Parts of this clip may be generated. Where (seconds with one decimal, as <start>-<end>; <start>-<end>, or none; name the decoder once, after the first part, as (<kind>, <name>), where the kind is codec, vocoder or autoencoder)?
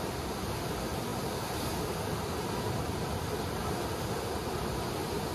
none